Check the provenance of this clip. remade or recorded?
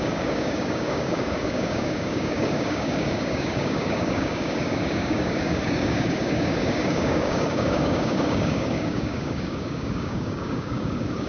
remade